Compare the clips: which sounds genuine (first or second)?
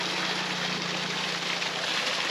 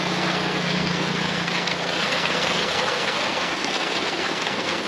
first